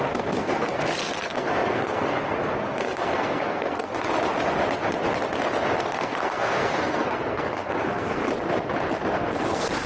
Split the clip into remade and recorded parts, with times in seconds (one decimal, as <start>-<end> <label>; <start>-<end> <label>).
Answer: 0.0-3.9 remade; 3.9-5.8 recorded; 5.8-8.2 remade; 8.2-9.1 recorded; 9.1-9.9 remade